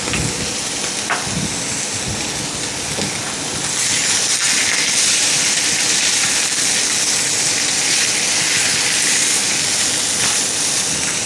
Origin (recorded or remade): recorded